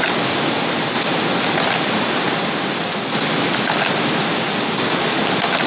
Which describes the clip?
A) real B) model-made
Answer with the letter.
A